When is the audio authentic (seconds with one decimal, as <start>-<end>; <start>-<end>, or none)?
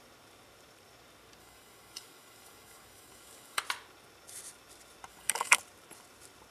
0.0-1.4; 3.6-5.1; 5.6-6.5